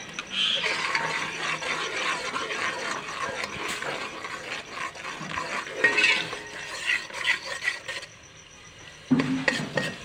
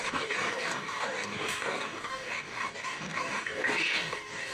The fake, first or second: second